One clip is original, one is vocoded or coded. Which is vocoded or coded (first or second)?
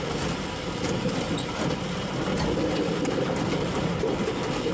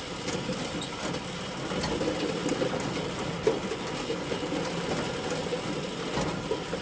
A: first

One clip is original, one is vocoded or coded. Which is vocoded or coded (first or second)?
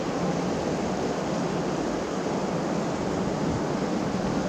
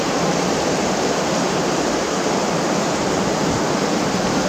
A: second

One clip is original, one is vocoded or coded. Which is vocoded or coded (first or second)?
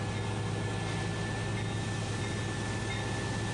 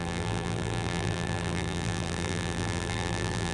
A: second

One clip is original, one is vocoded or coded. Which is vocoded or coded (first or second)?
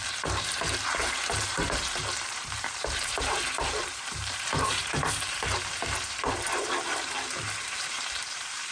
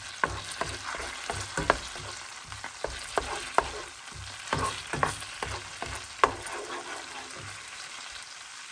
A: first